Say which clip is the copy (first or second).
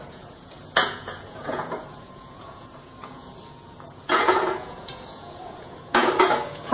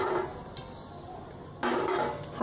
first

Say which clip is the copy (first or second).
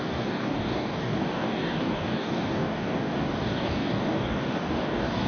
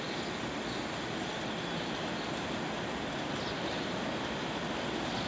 first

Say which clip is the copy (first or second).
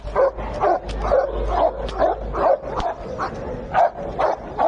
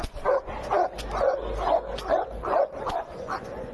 second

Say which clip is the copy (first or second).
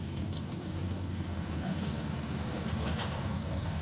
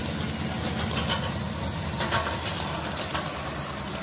first